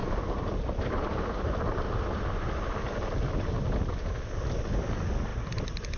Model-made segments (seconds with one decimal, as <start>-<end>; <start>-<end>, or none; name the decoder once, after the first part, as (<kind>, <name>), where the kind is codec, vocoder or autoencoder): 0.6-6.0 (vocoder, BigVGAN v2)